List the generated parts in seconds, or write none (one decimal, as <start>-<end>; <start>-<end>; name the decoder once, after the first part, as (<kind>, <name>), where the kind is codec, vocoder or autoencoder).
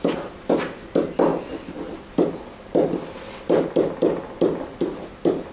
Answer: none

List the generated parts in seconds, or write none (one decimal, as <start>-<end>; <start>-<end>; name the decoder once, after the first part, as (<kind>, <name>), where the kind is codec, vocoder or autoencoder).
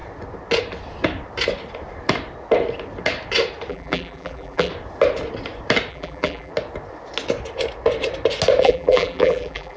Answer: 3.7-4.7 (vocoder, BigVGAN v2); 5.9-6.5; 8.6-9.8